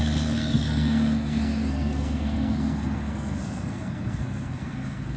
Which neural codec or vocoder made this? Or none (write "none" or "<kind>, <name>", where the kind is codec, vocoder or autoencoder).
codec, SNAC